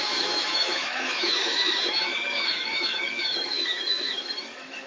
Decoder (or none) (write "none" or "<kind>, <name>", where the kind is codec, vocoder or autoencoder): autoencoder, DAC-VAE